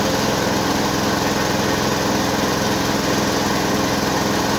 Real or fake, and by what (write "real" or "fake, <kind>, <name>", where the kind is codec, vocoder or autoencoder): real